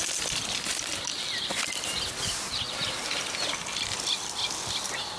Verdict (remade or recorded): recorded